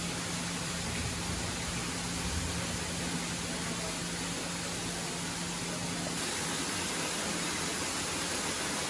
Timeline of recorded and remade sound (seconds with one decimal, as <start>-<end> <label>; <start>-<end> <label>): 0.0-8.9 recorded

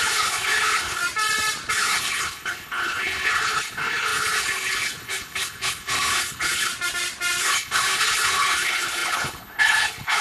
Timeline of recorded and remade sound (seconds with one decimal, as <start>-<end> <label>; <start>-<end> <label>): 0.0-1.0 remade; 1.0-1.7 recorded; 1.7-6.7 remade; 6.7-7.4 recorded; 7.4-10.2 remade

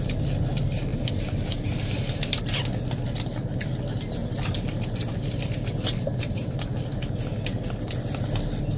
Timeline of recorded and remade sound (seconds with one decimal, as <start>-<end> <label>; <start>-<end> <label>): 0.0-0.9 recorded; 0.9-2.4 remade; 2.4-4.2 recorded; 4.2-6.8 remade; 6.8-8.8 recorded

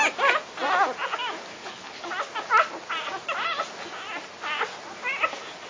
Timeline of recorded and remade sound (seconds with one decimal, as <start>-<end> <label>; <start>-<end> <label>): 0.0-1.5 recorded; 1.5-2.0 remade; 2.0-5.7 recorded

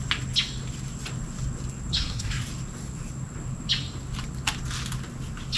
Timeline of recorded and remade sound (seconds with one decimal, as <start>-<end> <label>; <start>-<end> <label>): 0.0-1.9 recorded; 1.9-2.4 remade; 2.4-5.6 recorded